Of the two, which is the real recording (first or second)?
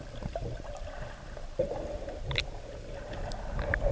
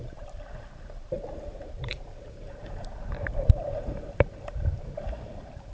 first